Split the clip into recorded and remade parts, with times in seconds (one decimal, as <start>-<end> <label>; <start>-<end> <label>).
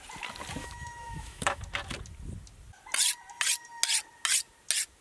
0.0-0.6 recorded; 0.6-1.6 remade; 1.6-5.0 recorded